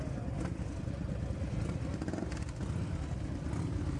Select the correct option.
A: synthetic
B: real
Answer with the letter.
B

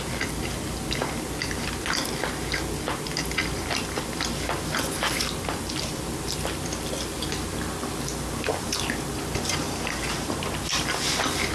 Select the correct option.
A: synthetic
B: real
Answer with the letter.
B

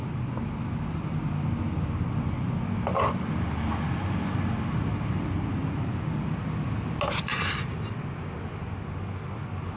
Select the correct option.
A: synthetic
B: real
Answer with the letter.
B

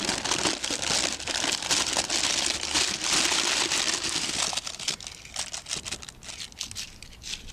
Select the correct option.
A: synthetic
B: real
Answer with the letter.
B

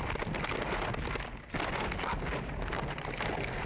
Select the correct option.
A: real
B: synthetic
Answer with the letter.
A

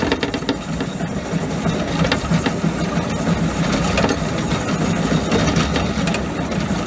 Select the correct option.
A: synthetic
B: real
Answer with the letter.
B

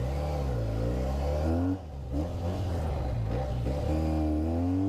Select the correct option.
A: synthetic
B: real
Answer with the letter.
B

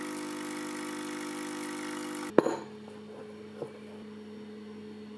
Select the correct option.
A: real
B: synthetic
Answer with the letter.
A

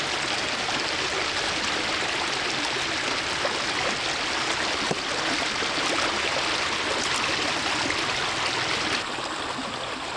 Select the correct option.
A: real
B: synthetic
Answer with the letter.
A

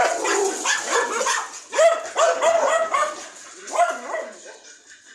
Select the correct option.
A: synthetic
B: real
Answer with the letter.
B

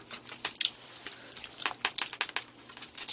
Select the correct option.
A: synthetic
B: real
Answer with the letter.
B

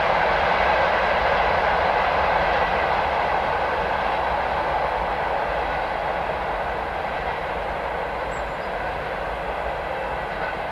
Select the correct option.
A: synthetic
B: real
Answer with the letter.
B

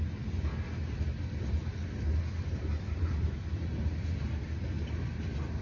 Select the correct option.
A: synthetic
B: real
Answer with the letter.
B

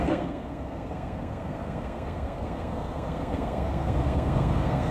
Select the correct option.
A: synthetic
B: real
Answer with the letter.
A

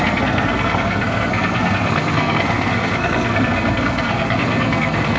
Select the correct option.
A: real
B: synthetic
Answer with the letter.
B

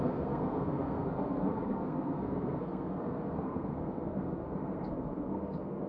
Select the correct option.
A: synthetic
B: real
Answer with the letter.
A